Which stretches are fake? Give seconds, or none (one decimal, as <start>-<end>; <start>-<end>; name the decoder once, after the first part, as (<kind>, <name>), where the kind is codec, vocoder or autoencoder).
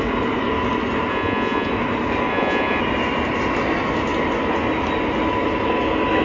1.1-1.7 (vocoder, Vocos); 2.3-2.8